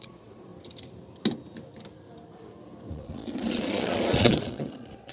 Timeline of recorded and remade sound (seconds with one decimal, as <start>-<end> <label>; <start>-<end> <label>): 0.0-0.5 remade; 0.5-2.9 recorded; 2.9-5.1 remade